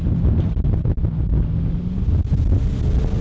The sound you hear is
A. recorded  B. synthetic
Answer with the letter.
A